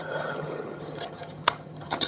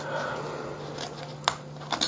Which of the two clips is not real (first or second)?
first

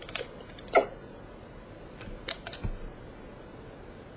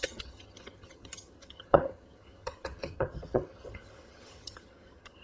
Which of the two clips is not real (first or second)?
second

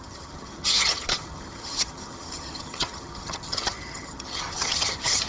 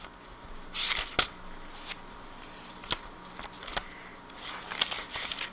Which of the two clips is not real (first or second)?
first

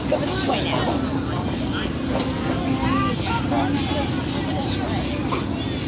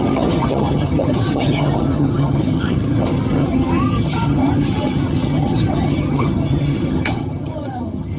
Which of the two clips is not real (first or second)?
second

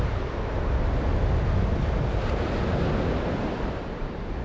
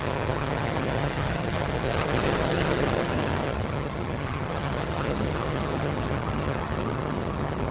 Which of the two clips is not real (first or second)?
second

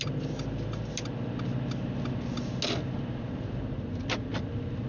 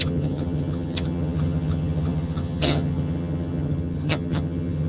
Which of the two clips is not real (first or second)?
second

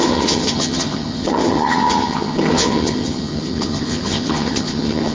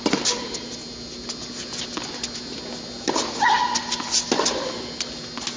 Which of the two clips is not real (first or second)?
first